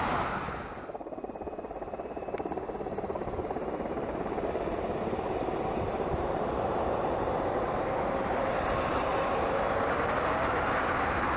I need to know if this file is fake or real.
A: fake